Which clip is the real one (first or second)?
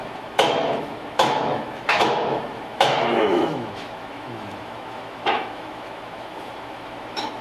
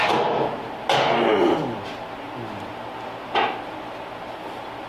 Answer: second